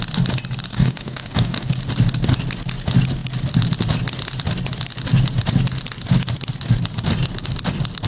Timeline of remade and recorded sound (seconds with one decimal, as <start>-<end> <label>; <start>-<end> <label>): 0.0-0.7 recorded; 0.7-1.7 remade; 1.7-8.1 recorded